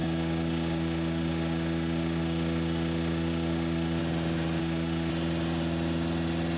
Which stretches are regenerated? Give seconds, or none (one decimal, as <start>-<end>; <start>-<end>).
0.0-4.0; 4.6-5.1